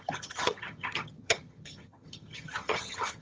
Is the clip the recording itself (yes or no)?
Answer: no